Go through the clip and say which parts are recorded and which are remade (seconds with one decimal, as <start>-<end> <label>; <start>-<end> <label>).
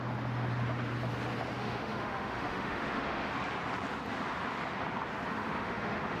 0.0-1.6 recorded; 1.6-3.3 remade; 3.3-5.3 recorded; 5.3-6.2 remade